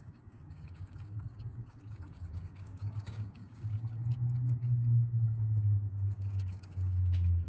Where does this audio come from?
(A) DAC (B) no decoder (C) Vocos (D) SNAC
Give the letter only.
A